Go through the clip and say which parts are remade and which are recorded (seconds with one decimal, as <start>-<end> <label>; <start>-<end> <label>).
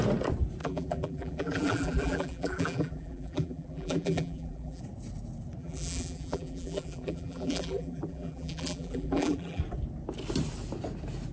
0.0-0.6 recorded; 0.6-4.8 remade; 4.8-5.6 recorded; 5.6-9.6 remade; 9.6-11.3 recorded